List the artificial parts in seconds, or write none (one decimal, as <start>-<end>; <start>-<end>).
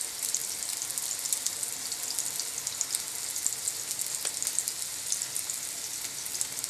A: none